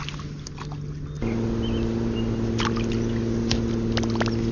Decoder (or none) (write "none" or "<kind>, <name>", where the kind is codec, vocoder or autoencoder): none